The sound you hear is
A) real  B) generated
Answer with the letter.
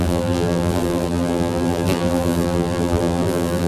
B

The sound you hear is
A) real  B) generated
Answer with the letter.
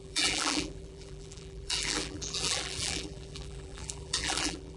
B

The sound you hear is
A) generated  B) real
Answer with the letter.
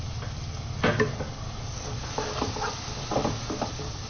B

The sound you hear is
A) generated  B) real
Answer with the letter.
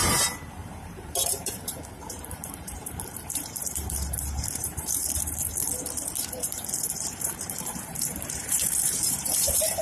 A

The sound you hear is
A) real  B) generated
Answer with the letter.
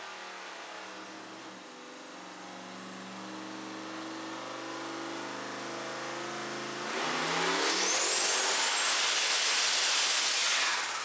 A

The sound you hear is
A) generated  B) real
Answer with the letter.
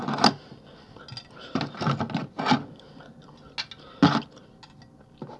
B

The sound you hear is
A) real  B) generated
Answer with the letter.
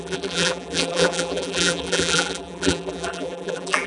B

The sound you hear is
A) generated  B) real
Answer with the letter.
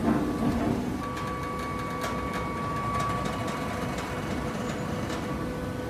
B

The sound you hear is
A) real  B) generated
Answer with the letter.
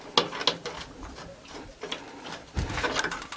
A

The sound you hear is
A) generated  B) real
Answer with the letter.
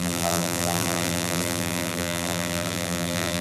A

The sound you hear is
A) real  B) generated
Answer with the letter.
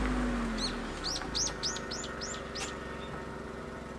A